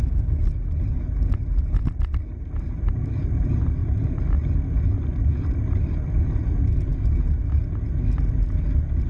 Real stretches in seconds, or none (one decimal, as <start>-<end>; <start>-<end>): 0.0-9.1